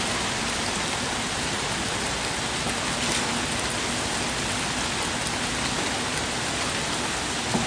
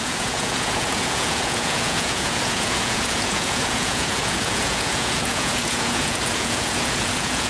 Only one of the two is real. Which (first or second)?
first